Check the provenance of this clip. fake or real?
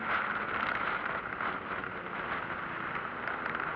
real